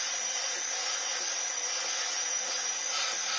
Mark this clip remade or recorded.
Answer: recorded